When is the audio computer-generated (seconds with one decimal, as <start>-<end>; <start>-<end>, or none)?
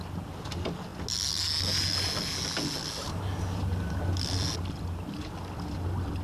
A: none